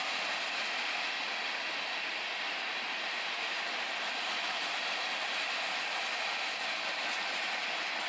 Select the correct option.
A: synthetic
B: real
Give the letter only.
B